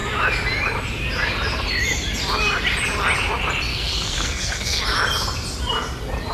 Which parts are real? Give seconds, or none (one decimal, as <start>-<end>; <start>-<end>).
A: 0.0-3.7; 4.8-6.3